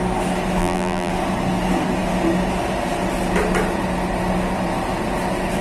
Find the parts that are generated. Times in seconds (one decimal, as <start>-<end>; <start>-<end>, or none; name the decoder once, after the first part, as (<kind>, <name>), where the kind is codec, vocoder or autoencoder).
0.6-1.1 (vocoder, BigVGAN v2)